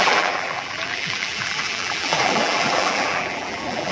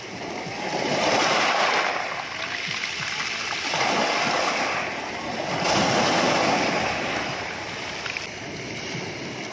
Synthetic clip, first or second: first